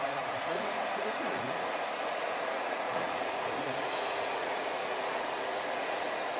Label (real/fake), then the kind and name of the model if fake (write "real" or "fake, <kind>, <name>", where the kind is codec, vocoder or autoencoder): fake, vocoder, Vocos